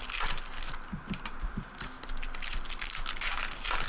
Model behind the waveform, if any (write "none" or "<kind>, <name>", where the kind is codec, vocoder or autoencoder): none